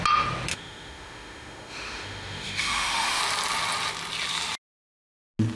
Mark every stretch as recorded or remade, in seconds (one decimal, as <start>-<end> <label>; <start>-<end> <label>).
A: 0.0-0.5 recorded; 0.5-3.2 remade; 3.2-5.6 recorded